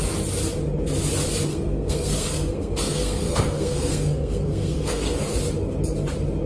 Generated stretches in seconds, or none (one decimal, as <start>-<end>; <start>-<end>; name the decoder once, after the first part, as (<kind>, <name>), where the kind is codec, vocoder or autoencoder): 1.5-5.4 (codec, SNAC)